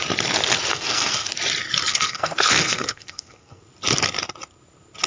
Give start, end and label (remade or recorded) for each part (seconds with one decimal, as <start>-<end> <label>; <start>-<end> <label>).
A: 0.0-0.7 recorded; 0.7-1.3 remade; 1.3-1.9 recorded; 1.9-3.6 remade; 3.6-5.1 recorded